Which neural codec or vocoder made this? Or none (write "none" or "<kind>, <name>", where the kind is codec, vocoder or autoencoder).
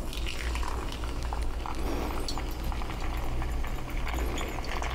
none